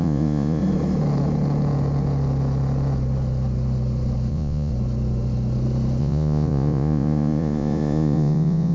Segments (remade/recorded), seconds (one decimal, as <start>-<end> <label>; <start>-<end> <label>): 0.0-0.6 remade; 0.6-4.3 recorded; 4.3-4.7 remade; 4.7-6.0 recorded; 6.0-8.7 remade

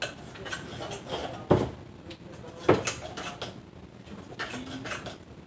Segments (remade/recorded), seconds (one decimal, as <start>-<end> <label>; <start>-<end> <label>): 0.0-5.5 recorded

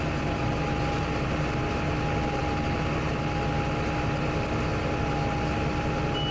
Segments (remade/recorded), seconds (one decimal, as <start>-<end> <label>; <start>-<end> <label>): 0.0-6.3 recorded

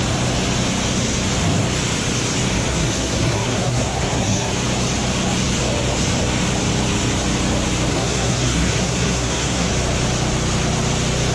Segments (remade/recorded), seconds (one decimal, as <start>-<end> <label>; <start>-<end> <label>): 0.0-2.7 recorded; 2.7-4.5 remade; 4.5-7.9 recorded; 7.9-9.7 remade; 9.7-11.3 recorded

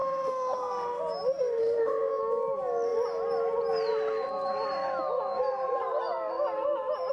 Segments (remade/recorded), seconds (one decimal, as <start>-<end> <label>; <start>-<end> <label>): 0.0-1.0 remade; 1.0-1.6 recorded; 1.6-2.2 remade; 2.2-7.1 recorded

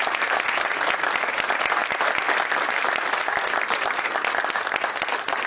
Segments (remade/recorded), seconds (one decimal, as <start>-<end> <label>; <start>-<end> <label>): 0.0-5.5 recorded

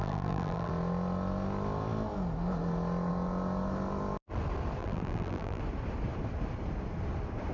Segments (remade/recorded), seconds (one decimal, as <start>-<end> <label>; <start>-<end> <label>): 0.0-0.7 remade; 0.7-4.8 recorded; 4.8-5.6 remade; 5.6-7.5 recorded